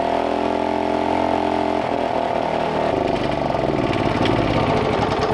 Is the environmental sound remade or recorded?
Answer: recorded